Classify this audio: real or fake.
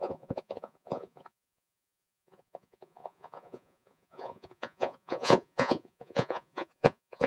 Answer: fake